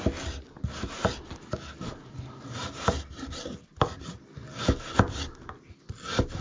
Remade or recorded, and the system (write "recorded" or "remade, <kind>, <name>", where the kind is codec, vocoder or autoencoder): recorded